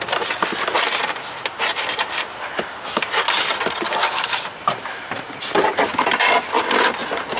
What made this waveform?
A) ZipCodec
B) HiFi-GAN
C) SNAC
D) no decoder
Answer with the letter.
D